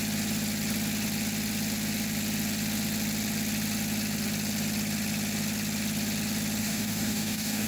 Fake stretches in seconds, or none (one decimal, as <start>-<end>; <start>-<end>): 6.6-7.7

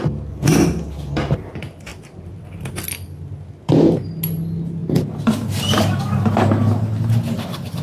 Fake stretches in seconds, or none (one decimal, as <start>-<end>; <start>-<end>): none

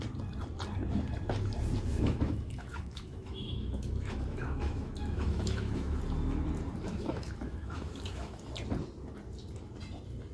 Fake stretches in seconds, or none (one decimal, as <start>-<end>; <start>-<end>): 1.9-6.0; 6.9-8.4